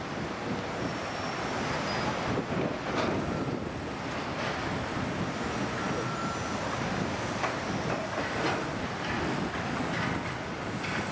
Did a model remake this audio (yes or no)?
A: no